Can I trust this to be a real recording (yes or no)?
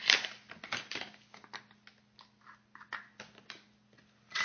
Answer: yes